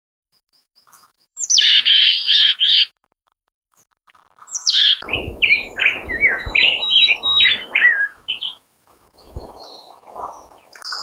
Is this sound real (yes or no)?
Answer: no